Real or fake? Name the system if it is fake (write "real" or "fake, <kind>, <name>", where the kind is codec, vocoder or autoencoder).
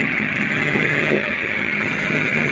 fake, vocoder, HiFi-GAN